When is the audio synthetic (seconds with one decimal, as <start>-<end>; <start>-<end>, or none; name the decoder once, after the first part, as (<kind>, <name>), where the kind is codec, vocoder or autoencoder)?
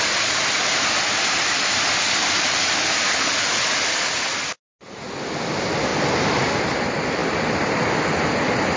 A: none